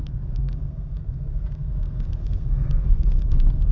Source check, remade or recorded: remade